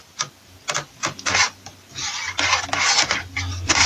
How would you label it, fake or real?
real